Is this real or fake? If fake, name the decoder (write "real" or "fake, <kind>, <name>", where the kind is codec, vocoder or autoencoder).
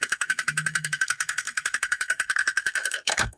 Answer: fake, codec, SNAC